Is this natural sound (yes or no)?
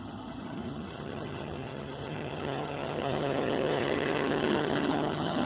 no